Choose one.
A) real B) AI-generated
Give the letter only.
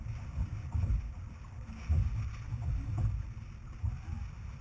A